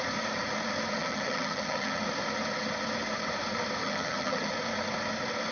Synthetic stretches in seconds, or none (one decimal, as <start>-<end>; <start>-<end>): 1.0-2.0; 3.8-4.5